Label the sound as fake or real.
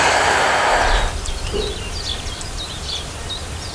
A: real